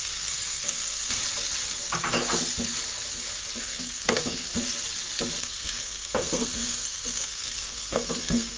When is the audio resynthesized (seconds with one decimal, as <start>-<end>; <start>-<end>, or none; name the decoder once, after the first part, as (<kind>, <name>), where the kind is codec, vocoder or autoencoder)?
0.0-1.2 (codec, SNAC); 3.6-4.5; 5.4-8.6